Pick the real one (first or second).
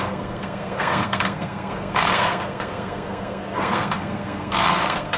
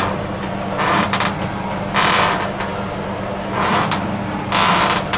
second